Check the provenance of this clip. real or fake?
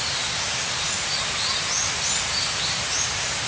real